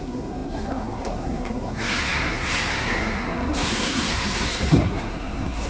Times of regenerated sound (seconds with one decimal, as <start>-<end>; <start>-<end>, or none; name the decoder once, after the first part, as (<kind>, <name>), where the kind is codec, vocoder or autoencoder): 0.0-5.7 (codec, SNAC)